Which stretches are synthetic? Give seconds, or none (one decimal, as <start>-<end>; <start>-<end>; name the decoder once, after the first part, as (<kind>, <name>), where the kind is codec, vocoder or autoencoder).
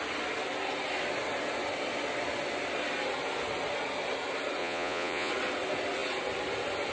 4.6-5.3 (vocoder, Vocos)